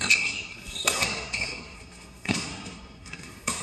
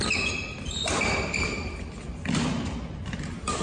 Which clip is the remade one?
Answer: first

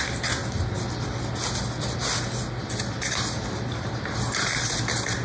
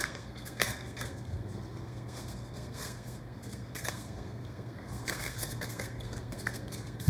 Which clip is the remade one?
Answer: second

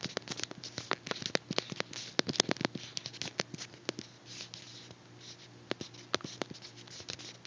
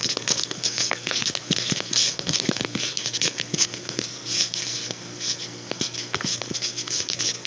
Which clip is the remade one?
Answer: second